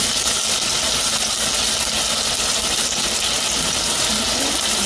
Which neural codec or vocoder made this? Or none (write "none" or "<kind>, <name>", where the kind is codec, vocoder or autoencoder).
none